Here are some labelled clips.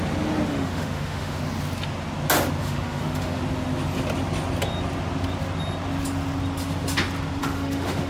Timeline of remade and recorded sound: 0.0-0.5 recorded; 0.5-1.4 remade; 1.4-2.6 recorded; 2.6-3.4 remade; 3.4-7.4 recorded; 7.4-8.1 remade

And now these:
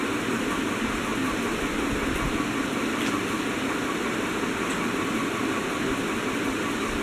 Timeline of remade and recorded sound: 0.0-7.0 recorded

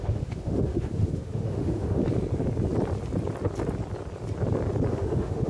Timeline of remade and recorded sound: 0.0-2.0 remade; 2.0-4.9 recorded; 4.9-5.5 remade

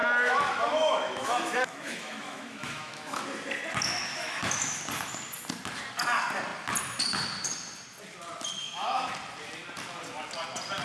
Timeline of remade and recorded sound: 0.0-3.2 remade; 3.2-4.1 recorded; 4.1-4.8 remade; 4.8-8.6 recorded; 8.6-9.1 remade; 9.1-10.8 recorded